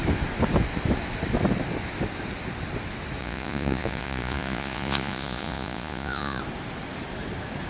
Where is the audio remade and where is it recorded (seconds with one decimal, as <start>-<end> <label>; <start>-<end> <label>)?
0.0-3.2 recorded; 3.2-6.4 remade; 6.4-7.7 recorded